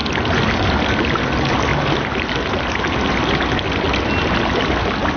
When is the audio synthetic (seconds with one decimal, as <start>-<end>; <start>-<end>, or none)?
none